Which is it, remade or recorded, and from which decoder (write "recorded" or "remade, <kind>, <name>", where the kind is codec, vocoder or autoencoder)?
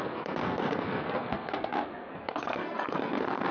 remade, codec, SNAC